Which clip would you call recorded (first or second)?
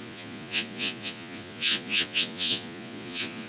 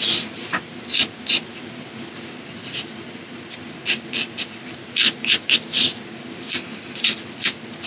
second